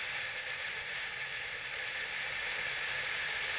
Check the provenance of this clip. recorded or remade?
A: recorded